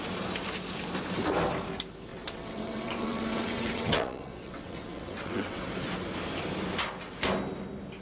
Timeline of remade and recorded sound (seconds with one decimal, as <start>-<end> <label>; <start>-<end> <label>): 0.0-2.1 recorded; 2.1-5.6 remade; 5.6-8.0 recorded